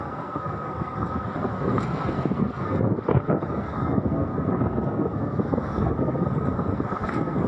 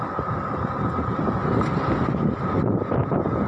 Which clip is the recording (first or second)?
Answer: second